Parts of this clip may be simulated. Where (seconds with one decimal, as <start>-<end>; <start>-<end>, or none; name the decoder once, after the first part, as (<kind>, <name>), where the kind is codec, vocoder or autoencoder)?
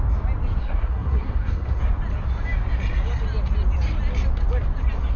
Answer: 0.6-1.8 (codec, SNAC)